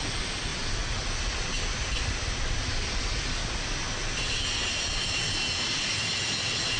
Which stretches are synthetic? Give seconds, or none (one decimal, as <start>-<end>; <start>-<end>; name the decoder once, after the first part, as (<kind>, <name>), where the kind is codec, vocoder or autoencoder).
none